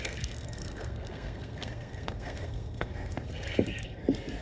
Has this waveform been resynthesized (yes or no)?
yes